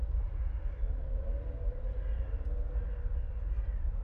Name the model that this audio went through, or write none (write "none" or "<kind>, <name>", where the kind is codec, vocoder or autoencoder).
none